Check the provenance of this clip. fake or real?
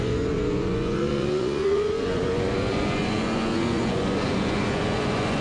fake